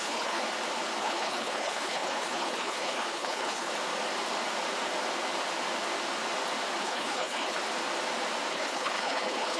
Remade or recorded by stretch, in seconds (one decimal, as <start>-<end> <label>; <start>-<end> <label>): 0.0-0.4 remade; 0.4-1.0 recorded; 1.0-3.7 remade; 3.7-6.8 recorded; 6.8-7.6 remade; 7.6-8.5 recorded; 8.5-9.6 remade